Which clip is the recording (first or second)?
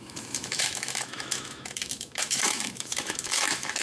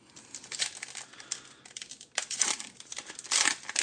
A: second